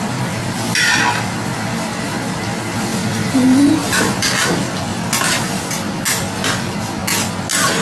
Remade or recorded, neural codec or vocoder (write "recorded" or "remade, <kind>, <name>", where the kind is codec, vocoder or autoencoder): recorded